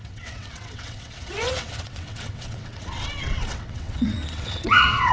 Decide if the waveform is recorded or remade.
remade